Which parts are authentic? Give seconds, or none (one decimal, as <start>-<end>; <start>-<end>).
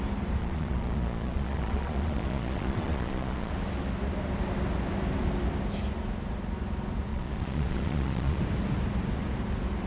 0.0-0.4; 3.5-7.1; 8.4-9.9